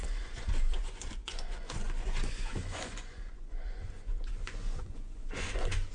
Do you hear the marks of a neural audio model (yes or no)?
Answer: yes